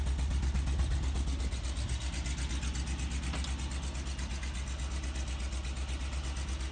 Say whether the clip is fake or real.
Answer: real